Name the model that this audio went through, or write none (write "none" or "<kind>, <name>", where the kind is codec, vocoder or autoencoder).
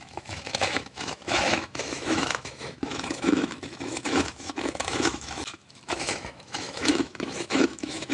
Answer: autoencoder, DAC-VAE